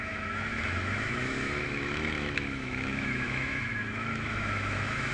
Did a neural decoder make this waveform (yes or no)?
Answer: yes